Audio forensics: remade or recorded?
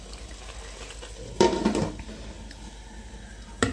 recorded